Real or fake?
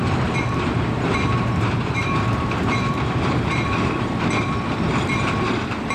fake